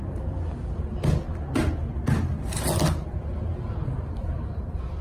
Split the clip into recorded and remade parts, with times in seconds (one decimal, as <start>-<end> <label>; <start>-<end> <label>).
0.0-5.0 recorded